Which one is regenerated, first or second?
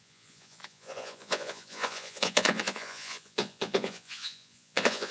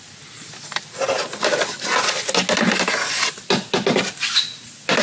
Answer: first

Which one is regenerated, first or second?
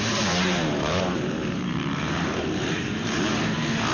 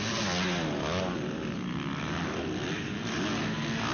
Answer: first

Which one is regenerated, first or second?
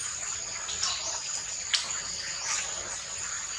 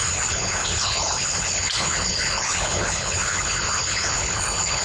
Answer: second